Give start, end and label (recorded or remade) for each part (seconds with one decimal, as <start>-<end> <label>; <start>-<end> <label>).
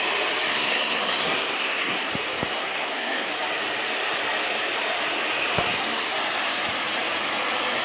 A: 0.0-0.5 recorded; 0.5-2.1 remade; 2.1-2.6 recorded; 2.6-3.3 remade; 3.3-7.8 recorded